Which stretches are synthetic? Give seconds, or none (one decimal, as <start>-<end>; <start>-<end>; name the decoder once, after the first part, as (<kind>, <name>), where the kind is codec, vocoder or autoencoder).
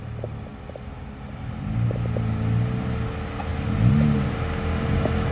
none